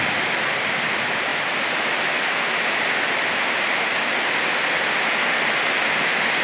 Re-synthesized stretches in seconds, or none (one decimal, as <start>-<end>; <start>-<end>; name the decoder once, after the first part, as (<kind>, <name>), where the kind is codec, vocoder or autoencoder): none